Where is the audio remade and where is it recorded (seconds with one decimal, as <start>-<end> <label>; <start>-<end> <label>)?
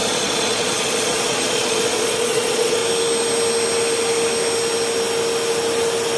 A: 0.0-2.8 remade; 2.8-6.2 recorded